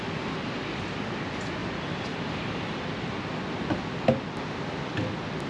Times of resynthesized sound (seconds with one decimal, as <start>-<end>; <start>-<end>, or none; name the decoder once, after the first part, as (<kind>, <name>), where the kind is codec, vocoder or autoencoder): none